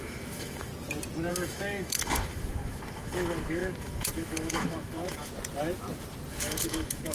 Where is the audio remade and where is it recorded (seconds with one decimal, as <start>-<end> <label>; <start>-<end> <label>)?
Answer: 0.0-0.7 remade; 0.7-1.3 recorded; 1.3-5.3 remade; 5.3-6.3 recorded; 6.3-7.1 remade